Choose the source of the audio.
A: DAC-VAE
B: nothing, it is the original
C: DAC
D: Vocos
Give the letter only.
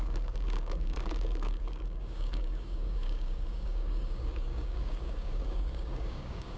C